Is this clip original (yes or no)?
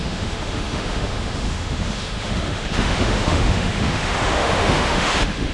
no